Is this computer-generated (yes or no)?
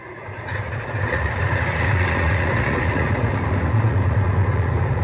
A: yes